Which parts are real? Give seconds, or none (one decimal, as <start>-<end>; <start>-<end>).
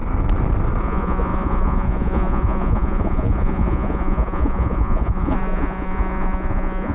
0.0-0.8